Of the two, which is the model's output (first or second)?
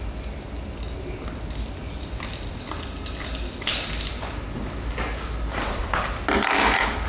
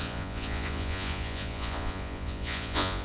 second